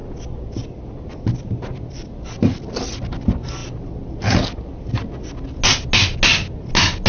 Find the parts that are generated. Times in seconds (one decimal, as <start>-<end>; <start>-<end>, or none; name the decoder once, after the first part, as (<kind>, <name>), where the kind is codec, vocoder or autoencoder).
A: none